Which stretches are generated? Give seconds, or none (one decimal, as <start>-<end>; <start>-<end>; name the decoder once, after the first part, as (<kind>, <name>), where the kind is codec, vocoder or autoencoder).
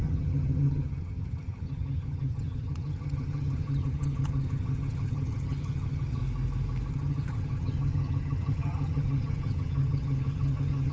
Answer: 0.0-6.2 (vocoder, HiFi-GAN); 6.9-10.9